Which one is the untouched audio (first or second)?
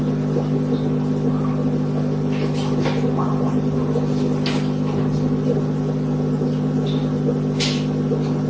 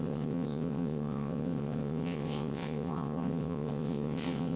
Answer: first